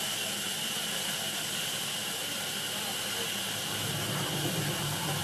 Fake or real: real